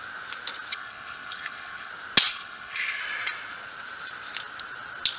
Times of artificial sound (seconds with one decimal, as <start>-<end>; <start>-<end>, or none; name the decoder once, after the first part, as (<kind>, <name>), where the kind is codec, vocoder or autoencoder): 0.7-1.9 (codec, HILCodec); 2.3-3.0

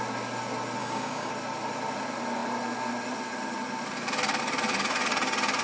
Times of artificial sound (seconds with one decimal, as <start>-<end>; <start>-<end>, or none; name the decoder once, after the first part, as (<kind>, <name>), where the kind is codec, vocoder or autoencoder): 0.8-1.3 (codec, DAC)

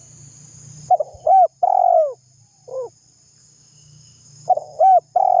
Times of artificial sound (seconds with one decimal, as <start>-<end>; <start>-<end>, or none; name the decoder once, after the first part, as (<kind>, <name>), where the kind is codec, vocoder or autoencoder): 3.4-4.8 (codec, DAC)

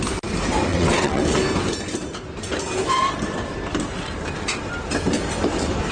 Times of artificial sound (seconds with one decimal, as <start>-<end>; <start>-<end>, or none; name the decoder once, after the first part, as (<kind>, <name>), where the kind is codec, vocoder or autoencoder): 0.7-1.2 (vocoder, WaveNeXt)